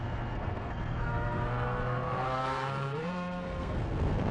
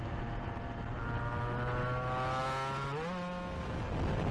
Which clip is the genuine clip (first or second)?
second